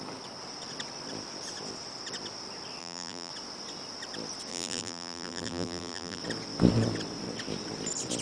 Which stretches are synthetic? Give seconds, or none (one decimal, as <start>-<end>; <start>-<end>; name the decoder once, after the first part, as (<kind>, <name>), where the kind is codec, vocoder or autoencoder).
2.8-3.3 (vocoder, BigVGAN v2); 4.5-6.2